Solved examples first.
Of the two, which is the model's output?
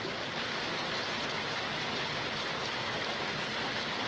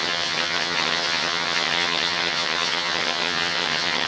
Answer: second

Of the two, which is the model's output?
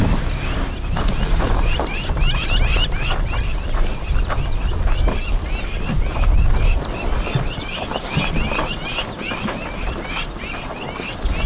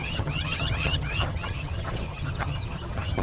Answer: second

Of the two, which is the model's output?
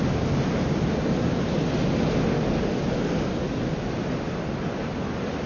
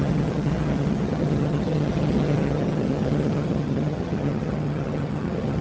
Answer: second